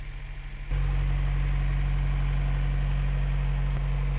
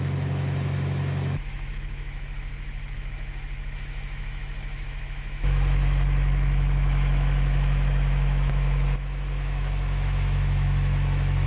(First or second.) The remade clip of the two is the second